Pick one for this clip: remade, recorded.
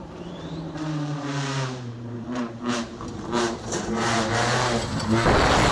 remade